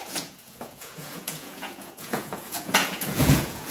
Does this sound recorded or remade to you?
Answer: remade